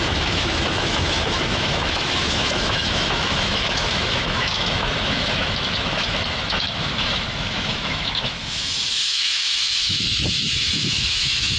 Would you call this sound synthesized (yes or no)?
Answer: yes